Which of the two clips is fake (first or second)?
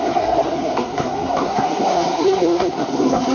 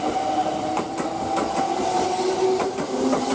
first